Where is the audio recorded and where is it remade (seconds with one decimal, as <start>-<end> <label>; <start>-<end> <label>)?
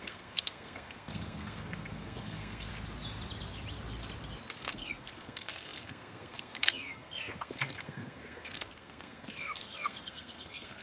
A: 0.0-2.7 remade; 2.7-4.6 recorded; 4.6-10.8 remade